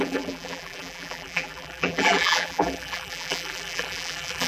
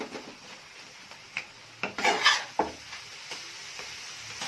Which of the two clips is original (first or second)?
second